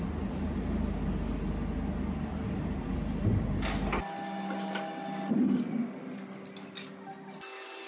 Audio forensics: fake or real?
real